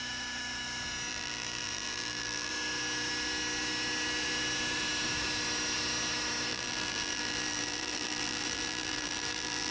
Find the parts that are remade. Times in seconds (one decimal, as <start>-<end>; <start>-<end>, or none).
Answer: 1.1-2.5; 6.5-9.7